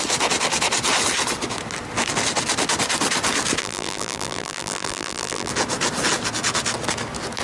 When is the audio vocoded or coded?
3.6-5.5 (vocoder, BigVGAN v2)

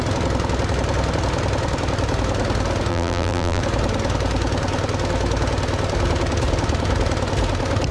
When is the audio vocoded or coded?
2.9-3.6 (vocoder, BigVGAN v2)

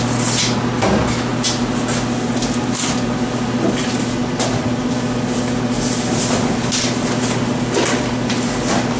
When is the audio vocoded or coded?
none

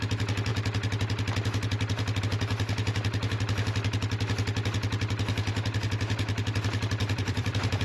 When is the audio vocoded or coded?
7.0-7.8 (vocoder, BigVGAN v2)

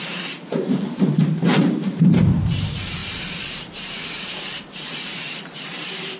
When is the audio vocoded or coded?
0.0-6.2 (vocoder, BigVGAN v2)